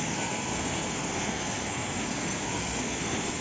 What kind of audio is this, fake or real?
fake